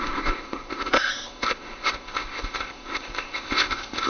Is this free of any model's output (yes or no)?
no